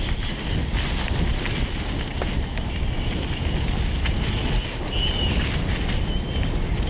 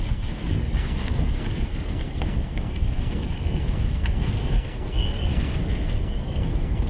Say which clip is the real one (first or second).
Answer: first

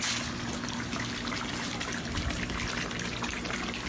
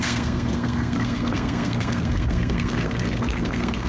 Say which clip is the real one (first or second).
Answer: first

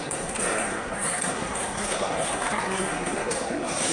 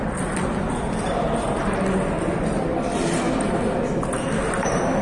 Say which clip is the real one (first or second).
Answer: second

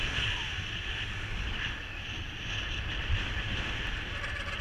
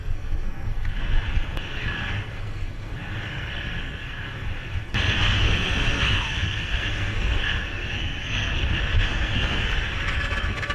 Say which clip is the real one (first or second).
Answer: first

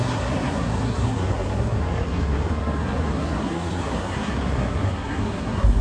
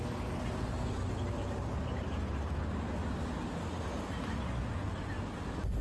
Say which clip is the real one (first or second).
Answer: second